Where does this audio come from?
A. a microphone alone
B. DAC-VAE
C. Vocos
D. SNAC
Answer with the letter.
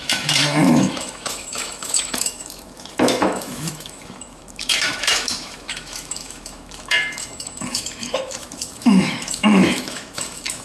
B